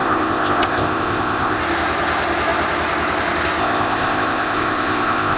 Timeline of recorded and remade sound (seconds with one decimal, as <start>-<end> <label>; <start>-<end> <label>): 0.0-1.6 remade; 1.6-3.6 recorded; 3.6-5.4 remade